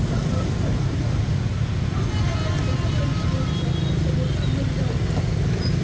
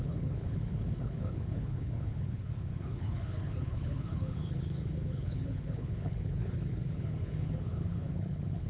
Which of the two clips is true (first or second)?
first